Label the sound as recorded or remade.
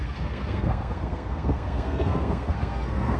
remade